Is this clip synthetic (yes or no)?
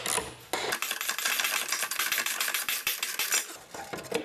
no